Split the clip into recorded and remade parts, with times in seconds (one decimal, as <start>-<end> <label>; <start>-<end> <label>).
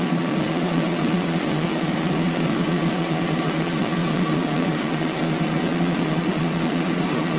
0.0-7.4 remade